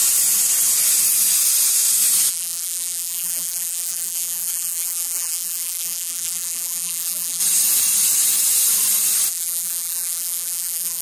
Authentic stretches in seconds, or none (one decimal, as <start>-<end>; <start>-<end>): 0.0-2.3; 7.4-9.3